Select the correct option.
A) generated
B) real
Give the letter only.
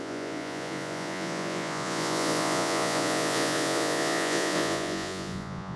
A